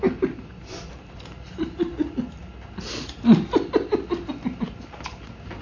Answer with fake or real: real